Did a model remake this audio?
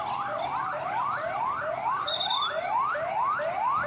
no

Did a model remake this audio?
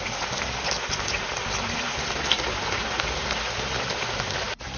no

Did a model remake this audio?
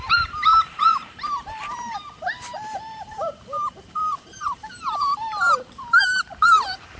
yes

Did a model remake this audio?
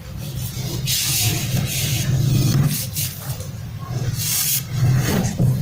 yes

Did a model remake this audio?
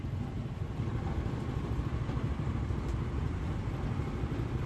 no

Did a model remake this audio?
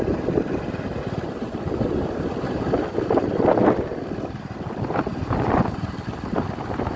no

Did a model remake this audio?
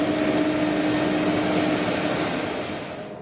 no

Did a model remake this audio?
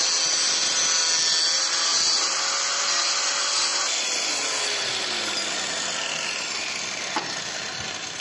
no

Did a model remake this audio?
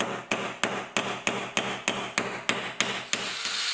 no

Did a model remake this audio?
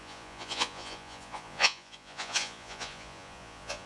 yes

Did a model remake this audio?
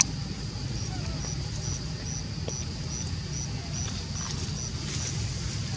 no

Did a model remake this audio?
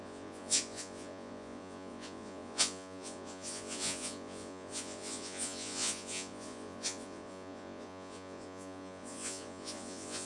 yes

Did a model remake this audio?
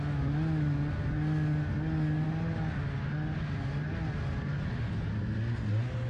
no